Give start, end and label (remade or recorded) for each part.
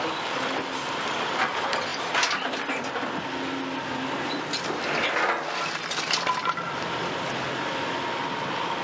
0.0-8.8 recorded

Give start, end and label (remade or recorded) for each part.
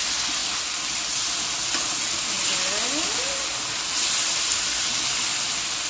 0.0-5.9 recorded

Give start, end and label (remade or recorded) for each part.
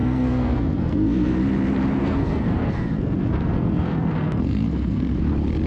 0.0-1.4 remade; 1.4-2.0 recorded; 2.0-5.2 remade; 5.2-5.7 recorded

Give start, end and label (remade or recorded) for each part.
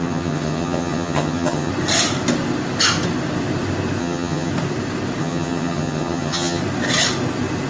0.0-1.7 remade; 1.7-4.0 recorded; 4.0-4.5 remade; 4.5-5.2 recorded; 5.2-6.6 remade; 6.6-7.7 recorded